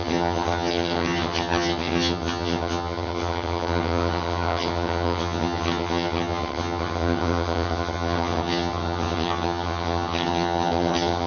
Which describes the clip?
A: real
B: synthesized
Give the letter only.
B